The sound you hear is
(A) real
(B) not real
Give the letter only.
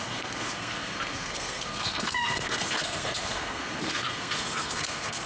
B